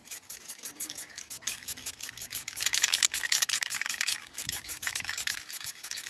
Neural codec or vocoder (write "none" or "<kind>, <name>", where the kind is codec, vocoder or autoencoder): codec, DAC